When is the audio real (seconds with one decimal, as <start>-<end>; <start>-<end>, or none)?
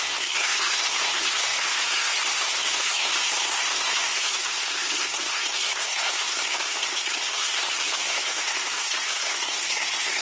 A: none